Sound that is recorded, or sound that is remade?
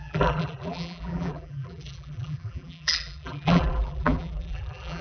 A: remade